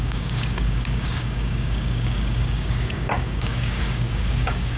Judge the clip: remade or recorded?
remade